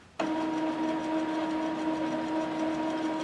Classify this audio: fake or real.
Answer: real